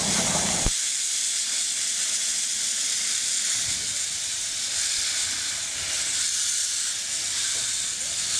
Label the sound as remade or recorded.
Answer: recorded